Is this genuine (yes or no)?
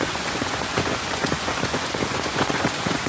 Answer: no